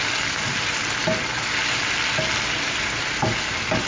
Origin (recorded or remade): recorded